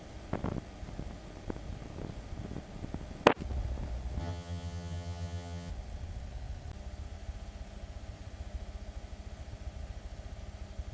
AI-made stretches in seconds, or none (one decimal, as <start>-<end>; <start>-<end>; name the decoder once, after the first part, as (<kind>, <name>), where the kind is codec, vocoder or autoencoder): 4.2-5.7 (vocoder, HiFi-GAN)